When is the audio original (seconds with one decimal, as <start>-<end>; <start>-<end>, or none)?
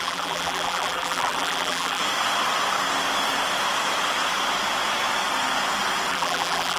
2.0-6.1